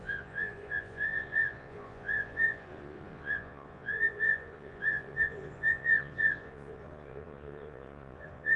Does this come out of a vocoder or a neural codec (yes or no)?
yes